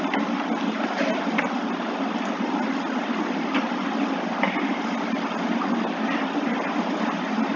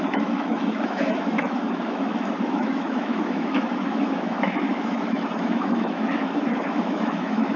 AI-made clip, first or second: second